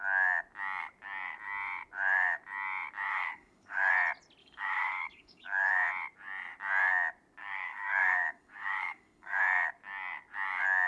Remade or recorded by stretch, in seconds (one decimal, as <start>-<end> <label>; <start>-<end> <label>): 0.0-3.1 recorded; 3.1-3.9 remade; 3.9-4.4 recorded; 4.4-5.7 remade; 5.7-7.4 recorded; 7.4-9.4 remade; 9.4-10.9 recorded